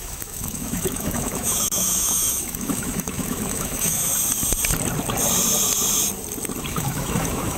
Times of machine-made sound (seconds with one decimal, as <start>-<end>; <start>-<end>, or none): 0.0-4.1; 6.7-7.6